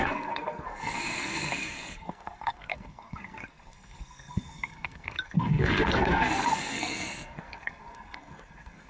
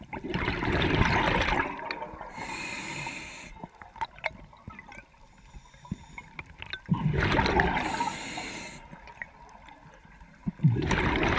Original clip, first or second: second